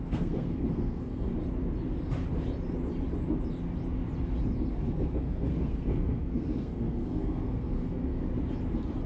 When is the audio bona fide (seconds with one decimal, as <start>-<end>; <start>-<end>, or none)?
1.3-4.7; 8.3-9.1